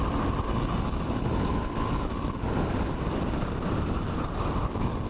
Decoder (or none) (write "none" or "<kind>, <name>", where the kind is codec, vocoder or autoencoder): none